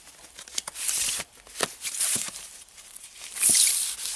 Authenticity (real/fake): real